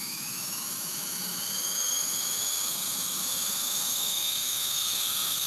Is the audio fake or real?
fake